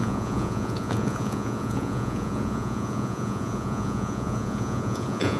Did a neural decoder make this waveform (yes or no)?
yes